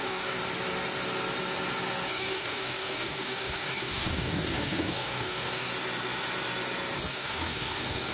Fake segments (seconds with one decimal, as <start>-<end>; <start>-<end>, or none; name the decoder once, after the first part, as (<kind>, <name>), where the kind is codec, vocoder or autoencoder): 0.0-0.4 (codec, DAC); 2.2-5.7; 7.1-8.1